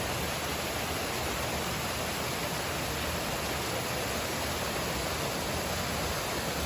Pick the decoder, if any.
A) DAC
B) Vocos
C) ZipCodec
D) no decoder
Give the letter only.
D